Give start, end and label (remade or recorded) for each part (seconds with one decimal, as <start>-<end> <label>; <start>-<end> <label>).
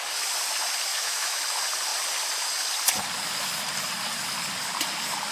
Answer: 0.0-0.9 recorded; 0.9-1.4 remade; 1.4-5.3 recorded